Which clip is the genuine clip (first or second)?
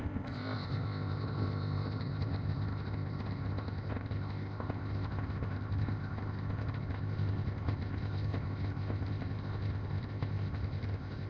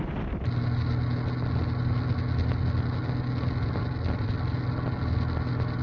second